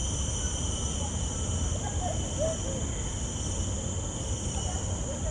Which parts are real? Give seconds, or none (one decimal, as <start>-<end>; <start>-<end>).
2.1-4.4